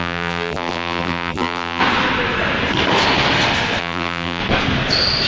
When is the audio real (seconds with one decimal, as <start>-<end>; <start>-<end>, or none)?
1.8-3.8; 4.4-5.3